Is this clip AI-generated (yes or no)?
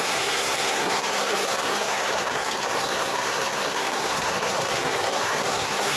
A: yes